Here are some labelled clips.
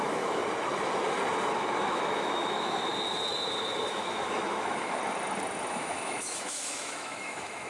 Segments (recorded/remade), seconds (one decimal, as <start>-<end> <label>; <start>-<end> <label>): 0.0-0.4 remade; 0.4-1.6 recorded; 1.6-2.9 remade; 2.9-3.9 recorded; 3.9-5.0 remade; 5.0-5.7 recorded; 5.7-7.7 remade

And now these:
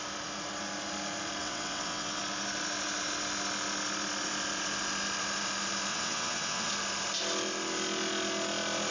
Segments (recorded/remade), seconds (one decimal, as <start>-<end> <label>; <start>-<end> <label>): 0.0-1.4 recorded; 1.4-2.2 remade; 2.2-5.9 recorded; 5.9-6.7 remade; 6.7-8.9 recorded

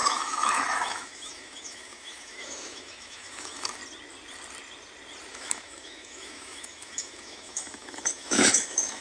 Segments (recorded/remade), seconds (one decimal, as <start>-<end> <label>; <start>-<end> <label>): 0.0-3.8 remade; 3.8-5.3 recorded; 5.3-9.0 remade

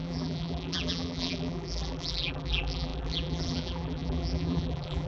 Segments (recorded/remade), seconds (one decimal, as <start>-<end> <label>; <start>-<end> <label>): 0.0-5.1 remade

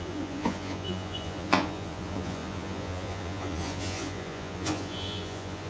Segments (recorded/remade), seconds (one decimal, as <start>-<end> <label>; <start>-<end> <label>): 0.0-5.7 remade

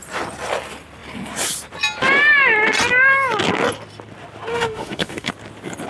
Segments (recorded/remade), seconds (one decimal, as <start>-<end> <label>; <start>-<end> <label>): 0.0-4.5 recorded; 4.5-5.3 remade; 5.3-5.9 recorded

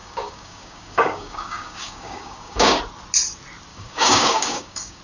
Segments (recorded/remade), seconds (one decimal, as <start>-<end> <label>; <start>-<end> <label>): 0.0-2.8 remade; 2.8-3.7 recorded; 3.7-5.0 remade